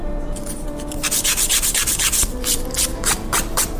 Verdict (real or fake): fake